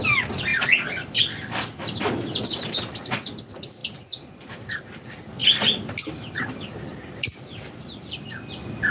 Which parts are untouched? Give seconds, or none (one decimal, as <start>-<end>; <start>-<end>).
0.0-8.9